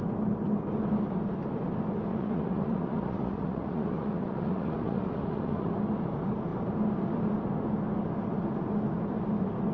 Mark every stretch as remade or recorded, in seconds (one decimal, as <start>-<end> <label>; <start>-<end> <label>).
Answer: 0.0-2.1 recorded; 2.1-5.7 remade; 5.7-9.7 recorded